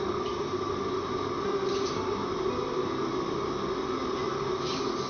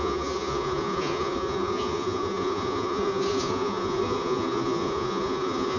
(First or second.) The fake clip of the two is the second